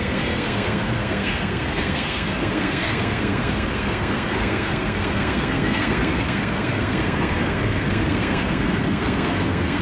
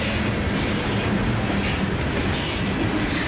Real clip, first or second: second